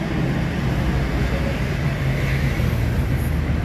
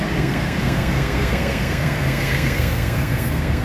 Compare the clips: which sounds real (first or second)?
first